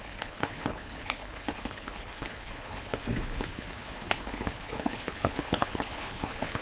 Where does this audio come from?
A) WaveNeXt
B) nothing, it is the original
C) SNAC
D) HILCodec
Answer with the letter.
D